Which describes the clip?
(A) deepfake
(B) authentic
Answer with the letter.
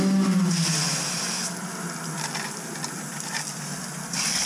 B